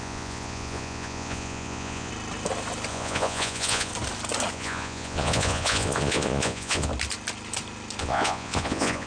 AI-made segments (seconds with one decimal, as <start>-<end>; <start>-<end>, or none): 0.0-2.1; 2.9-3.9; 4.5-6.9; 8.0-9.1

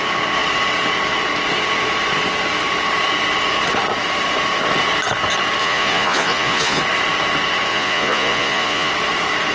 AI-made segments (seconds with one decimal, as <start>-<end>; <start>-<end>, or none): 5.6-6.8; 7.7-8.9

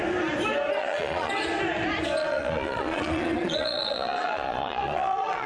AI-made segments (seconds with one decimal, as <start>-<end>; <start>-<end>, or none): 0.8-1.3; 2.2-5.5

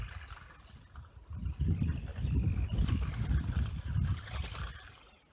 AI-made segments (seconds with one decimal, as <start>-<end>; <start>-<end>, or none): 2.1-5.3

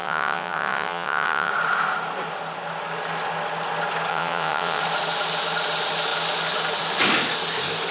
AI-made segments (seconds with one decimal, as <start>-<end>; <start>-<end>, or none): 0.0-1.5; 4.1-4.8

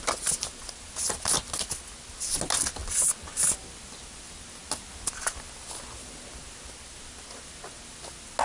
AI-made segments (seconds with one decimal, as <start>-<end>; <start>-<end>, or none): none

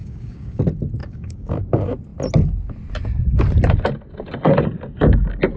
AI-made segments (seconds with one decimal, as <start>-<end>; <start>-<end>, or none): 0.0-0.6; 1.0-1.5